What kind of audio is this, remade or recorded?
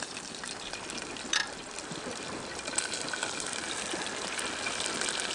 recorded